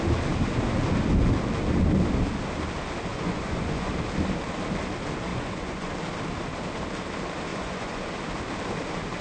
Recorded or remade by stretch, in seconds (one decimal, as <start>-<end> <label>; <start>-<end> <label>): 0.0-3.1 recorded; 3.1-3.9 remade; 3.9-5.3 recorded; 5.3-5.9 remade; 5.9-7.5 recorded; 7.5-8.1 remade; 8.1-9.2 recorded